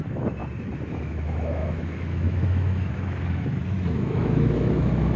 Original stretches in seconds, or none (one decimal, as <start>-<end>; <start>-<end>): 0.4-0.9